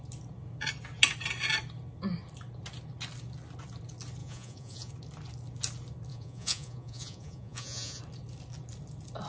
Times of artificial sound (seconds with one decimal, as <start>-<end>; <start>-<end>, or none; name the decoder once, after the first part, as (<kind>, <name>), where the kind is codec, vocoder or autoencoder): 4.2-4.9 (vocoder, Vocos); 6.1-8.0